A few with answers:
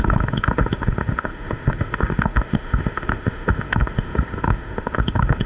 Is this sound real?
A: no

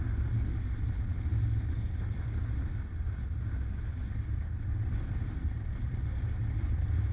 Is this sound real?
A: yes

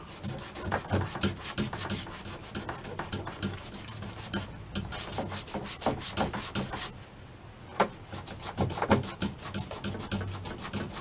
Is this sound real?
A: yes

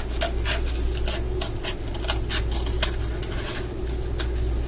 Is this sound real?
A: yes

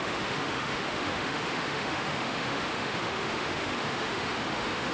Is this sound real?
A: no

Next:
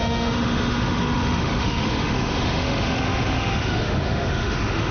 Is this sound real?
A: no